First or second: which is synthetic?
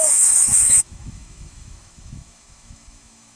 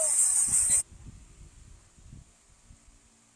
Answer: first